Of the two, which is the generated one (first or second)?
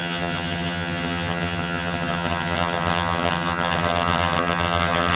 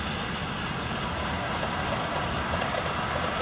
first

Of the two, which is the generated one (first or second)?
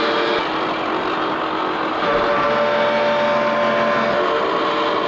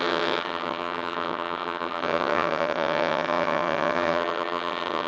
second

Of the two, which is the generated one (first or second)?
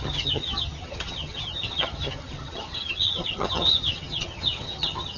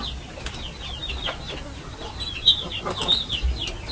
first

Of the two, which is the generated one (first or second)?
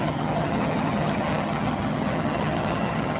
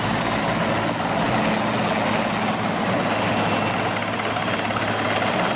first